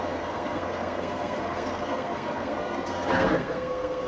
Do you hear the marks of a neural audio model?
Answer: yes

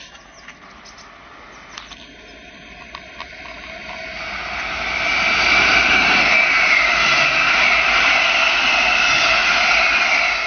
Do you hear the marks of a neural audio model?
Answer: no